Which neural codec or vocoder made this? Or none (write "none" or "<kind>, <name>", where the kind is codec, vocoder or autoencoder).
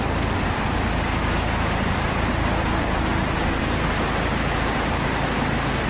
none